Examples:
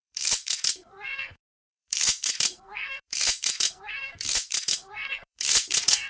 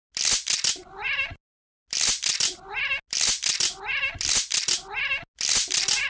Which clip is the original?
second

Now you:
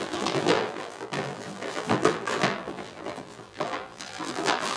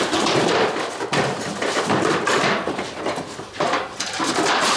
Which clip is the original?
second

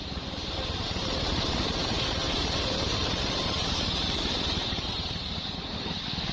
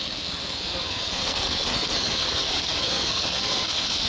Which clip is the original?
first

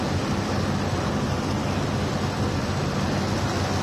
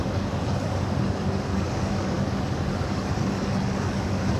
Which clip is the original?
first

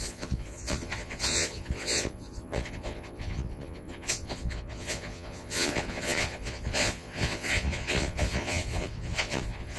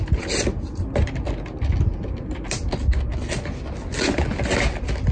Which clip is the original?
second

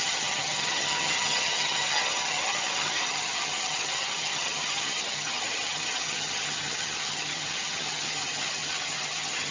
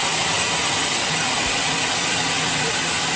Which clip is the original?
second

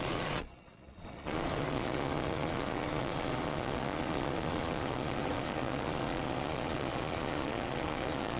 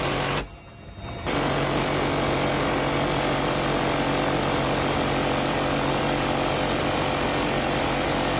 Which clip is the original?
second